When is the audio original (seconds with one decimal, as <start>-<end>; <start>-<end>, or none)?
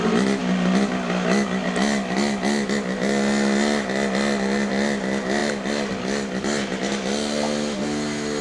0.0-8.4